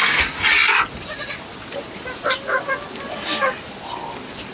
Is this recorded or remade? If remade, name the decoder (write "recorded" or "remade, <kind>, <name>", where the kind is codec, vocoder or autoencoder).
recorded